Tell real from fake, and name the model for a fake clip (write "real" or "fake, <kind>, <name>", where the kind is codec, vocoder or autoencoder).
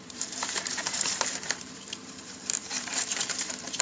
fake, vocoder, BigVGAN v2